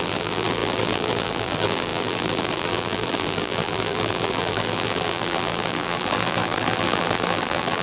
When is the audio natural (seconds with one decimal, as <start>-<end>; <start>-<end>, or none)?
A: none